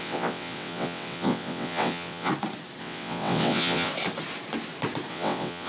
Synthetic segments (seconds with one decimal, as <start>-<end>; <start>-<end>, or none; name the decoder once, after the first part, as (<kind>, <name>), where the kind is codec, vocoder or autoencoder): 0.0-2.3 (vocoder, WaveNeXt); 2.8-3.9; 5.1-5.7